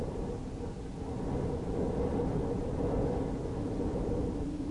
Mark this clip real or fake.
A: real